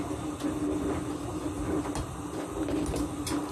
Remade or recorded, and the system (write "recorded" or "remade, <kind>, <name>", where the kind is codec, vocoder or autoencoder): recorded